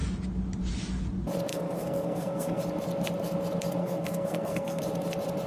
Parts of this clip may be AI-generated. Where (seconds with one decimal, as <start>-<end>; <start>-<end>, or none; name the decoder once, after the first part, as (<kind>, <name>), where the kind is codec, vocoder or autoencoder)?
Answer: 1.5-2.6 (codec, SNAC); 3.8-4.8